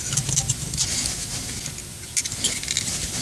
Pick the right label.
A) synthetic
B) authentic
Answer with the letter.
B